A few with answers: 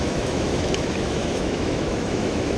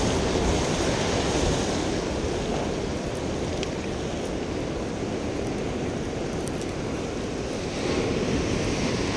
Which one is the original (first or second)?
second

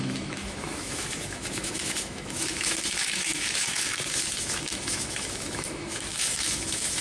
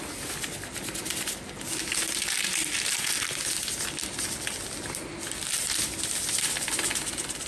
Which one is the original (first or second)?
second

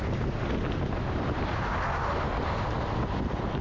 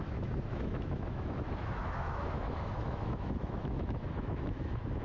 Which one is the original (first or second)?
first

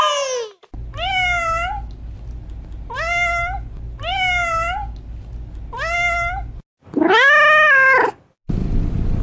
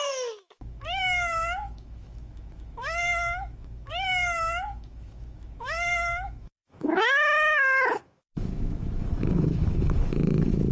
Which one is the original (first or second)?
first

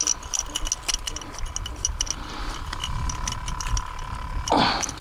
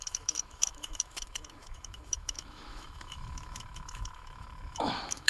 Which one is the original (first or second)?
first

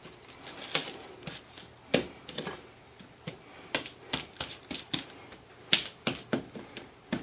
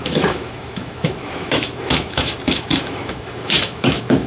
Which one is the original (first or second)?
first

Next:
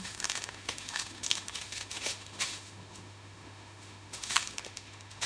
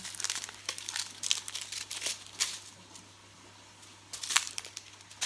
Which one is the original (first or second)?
second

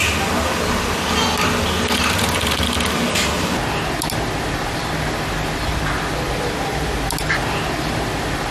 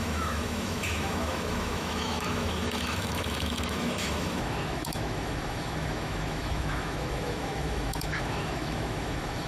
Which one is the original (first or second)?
first